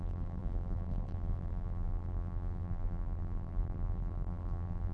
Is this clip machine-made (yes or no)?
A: yes